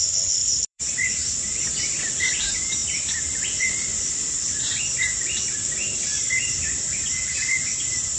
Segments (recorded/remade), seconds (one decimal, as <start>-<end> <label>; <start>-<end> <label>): 0.0-0.4 recorded; 0.4-1.1 remade; 1.1-6.1 recorded; 6.1-8.2 remade